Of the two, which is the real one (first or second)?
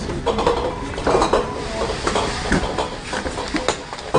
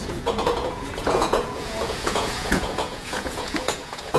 first